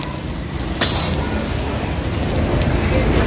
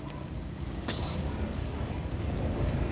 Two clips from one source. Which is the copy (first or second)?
second